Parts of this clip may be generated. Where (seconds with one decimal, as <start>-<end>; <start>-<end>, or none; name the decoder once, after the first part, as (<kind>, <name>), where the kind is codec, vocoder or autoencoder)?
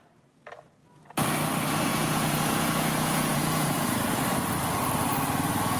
1.9-4.2 (vocoder, Vocos)